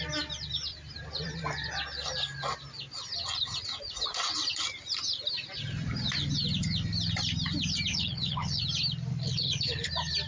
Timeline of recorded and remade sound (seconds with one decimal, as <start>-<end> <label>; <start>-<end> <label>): 0.0-7.9 recorded; 7.9-8.6 remade; 8.6-9.1 recorded; 9.1-9.9 remade; 9.9-10.3 recorded